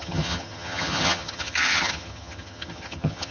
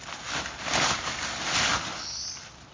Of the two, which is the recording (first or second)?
second